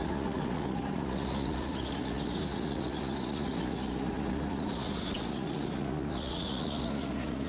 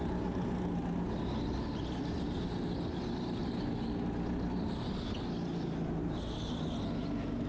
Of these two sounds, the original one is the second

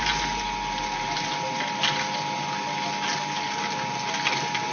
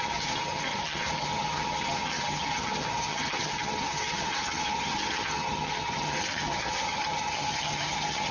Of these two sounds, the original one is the first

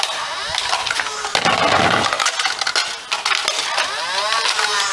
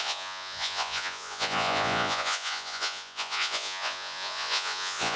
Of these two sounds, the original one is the first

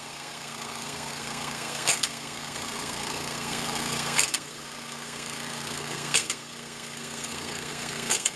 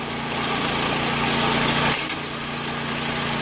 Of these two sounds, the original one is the second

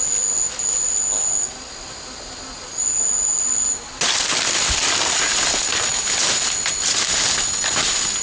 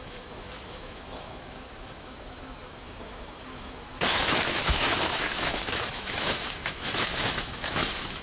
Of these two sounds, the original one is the first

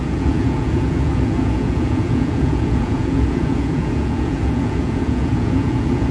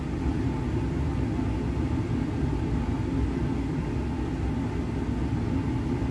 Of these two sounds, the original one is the second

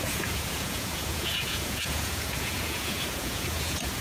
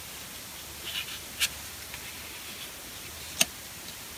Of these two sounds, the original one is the second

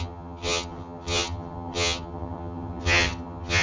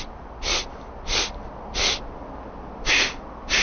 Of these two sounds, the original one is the second